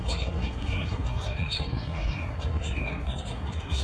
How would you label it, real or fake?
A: fake